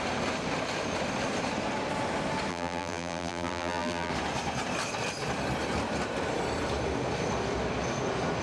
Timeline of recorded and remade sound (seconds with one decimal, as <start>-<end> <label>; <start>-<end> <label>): 0.0-2.5 recorded; 2.5-4.1 remade; 4.1-8.4 recorded